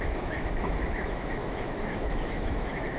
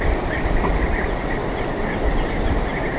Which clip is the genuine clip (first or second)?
second